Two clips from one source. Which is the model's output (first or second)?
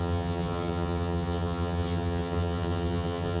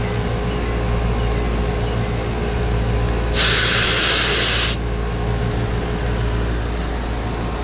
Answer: first